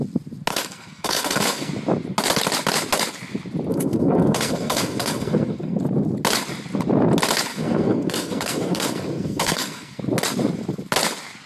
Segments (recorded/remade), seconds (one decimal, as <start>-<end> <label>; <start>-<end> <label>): 0.0-0.5 recorded; 0.5-1.7 remade; 1.7-3.7 recorded; 3.7-5.8 remade; 5.8-7.5 recorded; 7.5-10.0 remade; 10.0-11.5 recorded

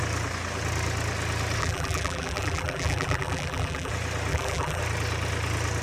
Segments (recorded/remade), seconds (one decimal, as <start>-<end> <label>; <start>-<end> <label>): 0.0-1.6 recorded; 1.6-3.9 remade; 3.9-4.3 recorded; 4.3-4.8 remade; 4.8-5.8 recorded

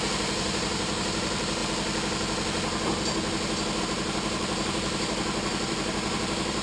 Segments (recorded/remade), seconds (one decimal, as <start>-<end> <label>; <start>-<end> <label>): 0.0-1.6 remade; 1.6-3.8 recorded; 3.8-6.6 remade

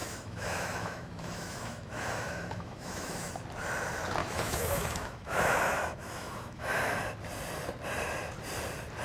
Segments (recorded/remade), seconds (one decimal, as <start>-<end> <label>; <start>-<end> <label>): 0.0-3.3 remade; 3.3-4.2 recorded; 4.2-6.9 remade; 6.9-9.0 recorded

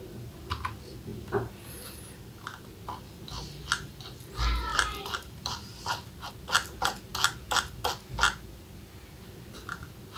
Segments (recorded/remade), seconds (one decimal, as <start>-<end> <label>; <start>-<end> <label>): 0.0-4.7 recorded; 4.7-6.3 remade; 6.3-10.2 recorded